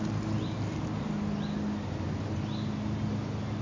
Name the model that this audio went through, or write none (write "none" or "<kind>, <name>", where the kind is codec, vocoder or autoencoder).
none